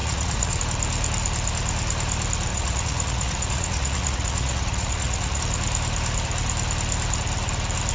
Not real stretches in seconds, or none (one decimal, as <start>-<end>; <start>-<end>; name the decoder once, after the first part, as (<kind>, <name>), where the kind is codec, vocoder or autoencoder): 0.0-0.6 (vocoder, Vocos); 2.5-5.4